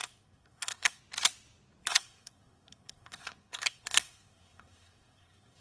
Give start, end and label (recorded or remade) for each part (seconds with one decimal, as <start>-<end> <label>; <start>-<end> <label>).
0.0-1.0 remade; 1.0-1.8 recorded; 1.8-5.6 remade